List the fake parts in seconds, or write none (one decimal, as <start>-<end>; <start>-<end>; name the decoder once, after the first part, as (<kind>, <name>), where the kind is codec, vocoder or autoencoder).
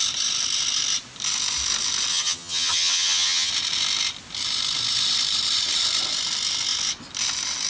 2.1-3.5 (vocoder, HiFi-GAN)